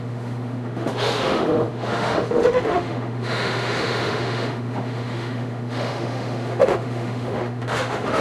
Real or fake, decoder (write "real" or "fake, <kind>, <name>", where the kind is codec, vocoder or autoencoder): fake, autoencoder, DAC-VAE